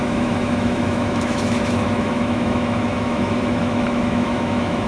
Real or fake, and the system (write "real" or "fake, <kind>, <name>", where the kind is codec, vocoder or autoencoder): fake, autoencoder, DAC-VAE